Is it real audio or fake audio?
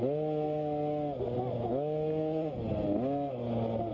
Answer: real